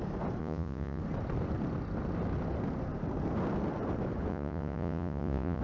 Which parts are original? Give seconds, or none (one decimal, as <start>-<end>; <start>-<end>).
0.0-0.4; 1.0-4.3